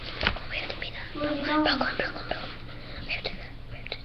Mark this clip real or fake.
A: real